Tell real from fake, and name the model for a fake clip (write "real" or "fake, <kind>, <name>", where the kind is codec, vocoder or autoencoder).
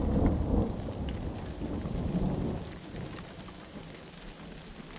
real